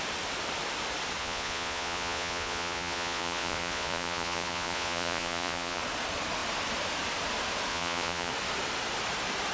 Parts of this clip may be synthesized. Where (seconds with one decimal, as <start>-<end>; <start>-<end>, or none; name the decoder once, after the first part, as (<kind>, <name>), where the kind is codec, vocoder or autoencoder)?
1.2-5.8 (vocoder, Vocos); 7.7-8.3

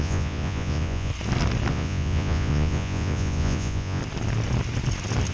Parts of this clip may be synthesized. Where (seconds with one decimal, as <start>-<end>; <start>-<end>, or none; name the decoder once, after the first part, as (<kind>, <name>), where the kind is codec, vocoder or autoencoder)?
0.0-1.1 (vocoder, Vocos); 1.7-4.0

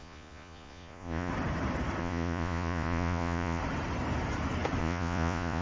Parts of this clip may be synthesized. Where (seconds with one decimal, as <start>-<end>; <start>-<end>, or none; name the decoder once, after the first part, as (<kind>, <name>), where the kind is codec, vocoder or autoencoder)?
0.0-1.3 (vocoder, Vocos); 2.0-3.6; 4.8-5.6

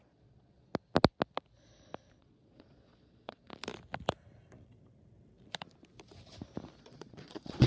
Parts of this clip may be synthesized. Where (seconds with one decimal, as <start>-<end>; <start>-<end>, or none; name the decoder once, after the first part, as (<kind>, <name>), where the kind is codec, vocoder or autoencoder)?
0.0-0.7 (vocoder, Vocos); 2.2-3.5; 6.8-7.7